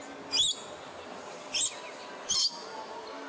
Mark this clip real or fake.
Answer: real